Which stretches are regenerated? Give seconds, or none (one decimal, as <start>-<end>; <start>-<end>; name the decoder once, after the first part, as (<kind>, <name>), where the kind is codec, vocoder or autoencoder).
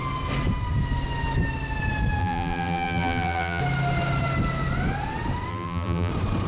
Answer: 2.2-3.6 (vocoder, BigVGAN v2); 5.5-6.1